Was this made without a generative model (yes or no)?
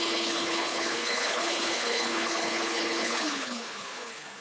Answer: no